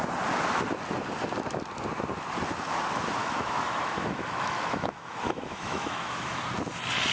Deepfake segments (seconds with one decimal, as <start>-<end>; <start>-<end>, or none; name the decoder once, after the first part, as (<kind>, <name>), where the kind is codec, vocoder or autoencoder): 3.2-6.4 (autoencoder, DAC-VAE)